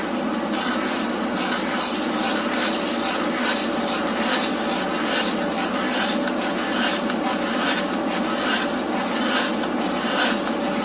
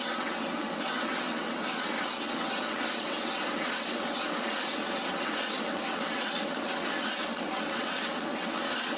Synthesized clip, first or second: second